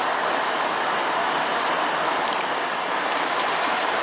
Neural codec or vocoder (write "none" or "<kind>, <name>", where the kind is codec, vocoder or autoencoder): vocoder, BigVGAN v2